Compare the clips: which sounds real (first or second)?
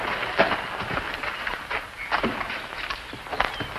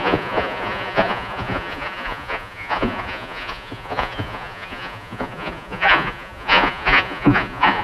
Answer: first